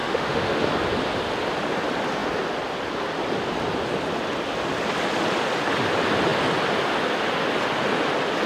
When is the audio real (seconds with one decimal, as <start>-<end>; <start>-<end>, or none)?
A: 0.6-8.5